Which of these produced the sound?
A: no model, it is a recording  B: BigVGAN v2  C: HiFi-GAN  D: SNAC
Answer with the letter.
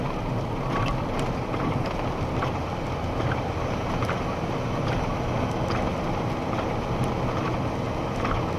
A